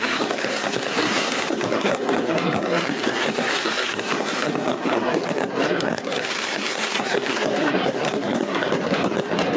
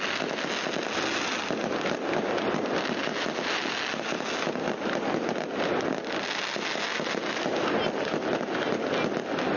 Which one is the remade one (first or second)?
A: first